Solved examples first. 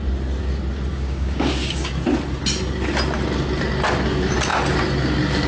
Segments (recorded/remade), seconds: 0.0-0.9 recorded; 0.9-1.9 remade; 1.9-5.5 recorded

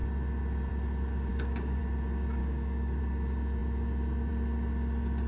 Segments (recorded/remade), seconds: 0.0-1.3 recorded; 1.3-1.8 remade; 1.8-2.4 recorded; 2.4-3.0 remade; 3.0-5.3 recorded

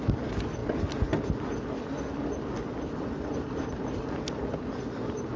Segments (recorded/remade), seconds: 0.0-5.4 recorded

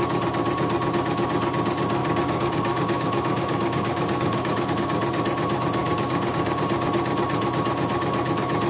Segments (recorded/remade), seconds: 0.0-2.0 recorded; 2.0-4.7 remade; 4.7-5.8 recorded; 5.8-6.6 remade; 6.6-8.7 recorded

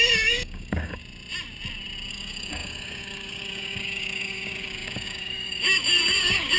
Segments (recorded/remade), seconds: 0.0-1.0 remade; 1.0-2.1 recorded; 2.1-6.6 remade

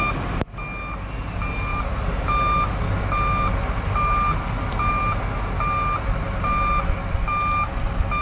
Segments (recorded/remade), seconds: 0.0-8.2 recorded

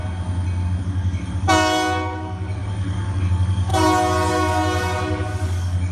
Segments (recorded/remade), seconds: 0.0-0.8 recorded; 0.8-3.7 remade; 3.7-4.3 recorded; 4.3-5.9 remade

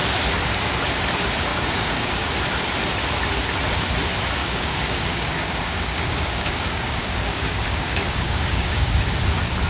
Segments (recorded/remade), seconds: 0.0-1.5 recorded; 1.5-2.3 remade; 2.3-4.4 recorded; 4.4-9.0 remade; 9.0-9.7 recorded